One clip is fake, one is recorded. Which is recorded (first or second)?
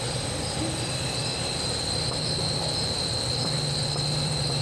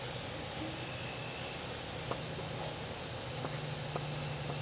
second